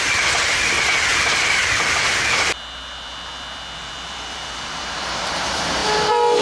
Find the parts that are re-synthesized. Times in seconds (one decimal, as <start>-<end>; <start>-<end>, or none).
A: 1.1-4.9